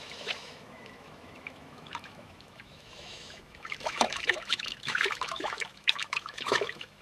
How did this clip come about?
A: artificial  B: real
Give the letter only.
A